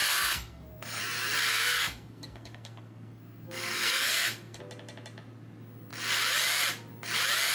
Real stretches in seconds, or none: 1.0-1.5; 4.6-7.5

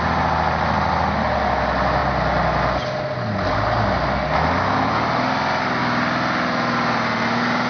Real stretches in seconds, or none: 0.0-7.7

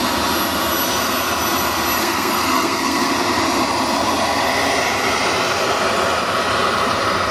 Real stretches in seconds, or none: 0.0-2.0; 3.1-7.3

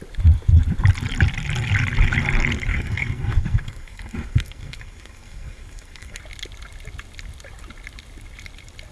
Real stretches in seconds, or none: 0.0-2.7; 6.2-8.9

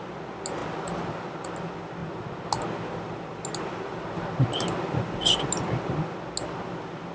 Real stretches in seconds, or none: 0.0-7.1

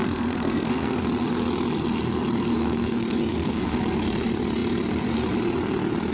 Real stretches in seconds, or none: 1.0-2.6; 3.8-6.1

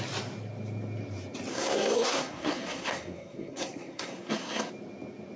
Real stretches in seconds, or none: 0.0-1.5; 4.7-5.4